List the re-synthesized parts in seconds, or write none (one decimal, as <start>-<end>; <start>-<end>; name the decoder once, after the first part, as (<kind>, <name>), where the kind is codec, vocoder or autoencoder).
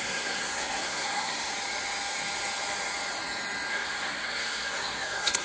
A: 0.0-1.5 (codec, SNAC); 3.7-5.4